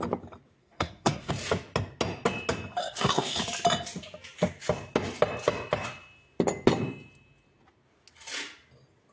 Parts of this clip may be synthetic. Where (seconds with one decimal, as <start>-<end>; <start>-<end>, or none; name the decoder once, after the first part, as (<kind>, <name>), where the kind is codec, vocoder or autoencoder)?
0.6-1.3 (codec, SNAC); 2.8-3.4